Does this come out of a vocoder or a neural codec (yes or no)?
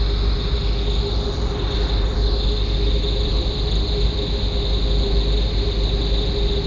no